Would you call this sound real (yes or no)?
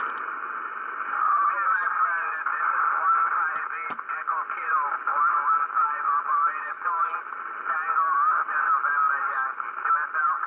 yes